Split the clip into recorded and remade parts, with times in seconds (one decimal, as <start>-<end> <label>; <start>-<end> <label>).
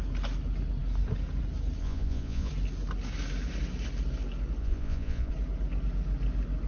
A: 0.0-1.8 recorded; 1.8-2.5 remade; 2.5-4.6 recorded; 4.6-5.3 remade; 5.3-6.7 recorded